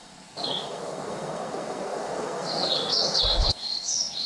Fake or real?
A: fake